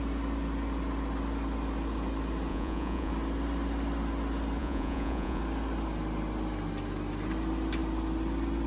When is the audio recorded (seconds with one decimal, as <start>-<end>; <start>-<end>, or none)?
0.0-2.5; 3.1-4.6; 5.4-8.7